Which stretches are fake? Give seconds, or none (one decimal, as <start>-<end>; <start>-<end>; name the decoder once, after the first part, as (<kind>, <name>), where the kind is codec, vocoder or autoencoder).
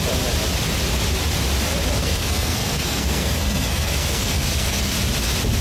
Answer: 2.0-4.9 (codec, SNAC)